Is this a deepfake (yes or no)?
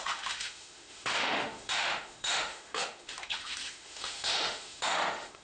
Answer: yes